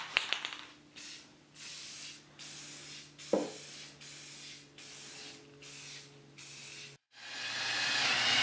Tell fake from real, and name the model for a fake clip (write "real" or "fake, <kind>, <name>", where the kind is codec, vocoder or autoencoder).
real